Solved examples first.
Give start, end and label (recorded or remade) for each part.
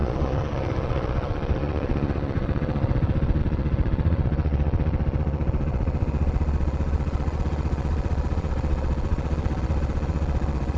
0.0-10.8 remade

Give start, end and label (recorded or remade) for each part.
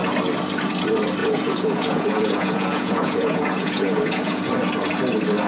0.0-1.2 recorded; 1.2-4.5 remade; 4.5-5.5 recorded